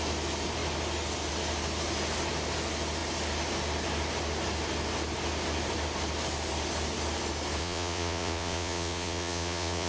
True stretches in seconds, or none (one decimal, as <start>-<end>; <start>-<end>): 0.0-7.6